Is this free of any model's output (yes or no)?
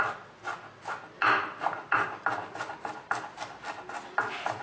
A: yes